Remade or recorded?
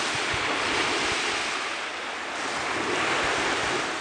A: recorded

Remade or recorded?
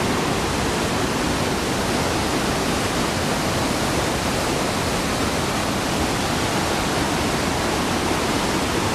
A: recorded